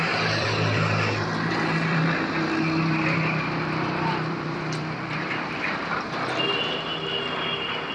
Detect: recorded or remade remade